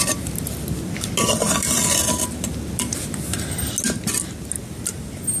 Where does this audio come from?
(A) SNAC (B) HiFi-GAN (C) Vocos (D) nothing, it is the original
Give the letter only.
D